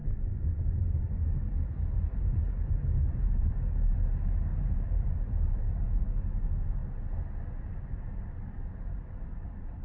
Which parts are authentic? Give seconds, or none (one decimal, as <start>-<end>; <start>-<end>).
0.0-4.5; 6.0-9.8